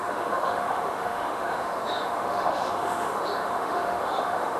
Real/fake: fake